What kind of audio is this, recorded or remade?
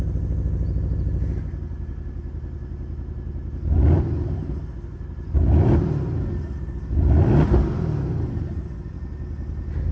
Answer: recorded